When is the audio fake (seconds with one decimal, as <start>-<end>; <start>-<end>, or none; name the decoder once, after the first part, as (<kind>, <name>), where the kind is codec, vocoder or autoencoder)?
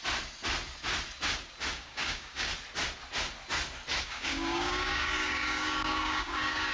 1.7-2.5 (codec, DAC); 4.0-6.7